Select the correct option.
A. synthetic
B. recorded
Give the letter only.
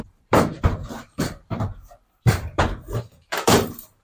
A